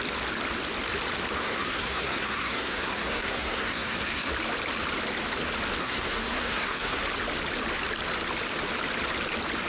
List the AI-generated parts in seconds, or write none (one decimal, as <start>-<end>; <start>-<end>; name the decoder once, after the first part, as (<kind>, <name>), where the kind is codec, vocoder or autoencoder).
1.4-4.3 (codec, SNAC); 5.8-7.0